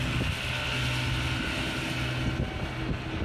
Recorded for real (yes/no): yes